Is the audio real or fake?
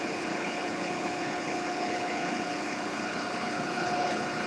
fake